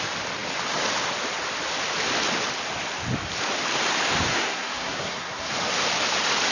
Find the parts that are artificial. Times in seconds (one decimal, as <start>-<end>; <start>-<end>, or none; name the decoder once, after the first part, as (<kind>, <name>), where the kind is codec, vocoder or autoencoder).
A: 4.3-5.5 (codec, SNAC)